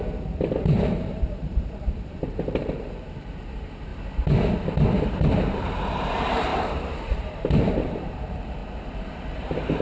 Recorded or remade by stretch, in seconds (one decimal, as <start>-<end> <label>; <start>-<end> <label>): 0.0-3.9 remade; 3.9-5.2 recorded; 5.2-8.6 remade; 8.6-9.3 recorded; 9.3-9.8 remade